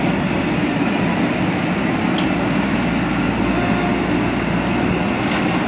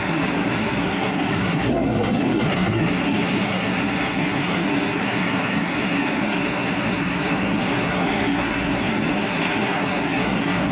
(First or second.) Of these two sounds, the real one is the first